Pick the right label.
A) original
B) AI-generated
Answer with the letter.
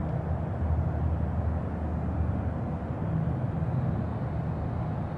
A